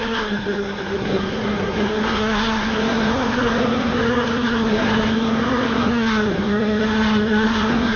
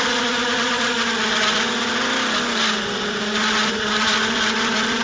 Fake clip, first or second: first